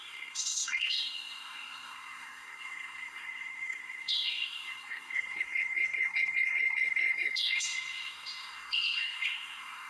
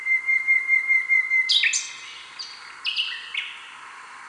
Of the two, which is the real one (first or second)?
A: second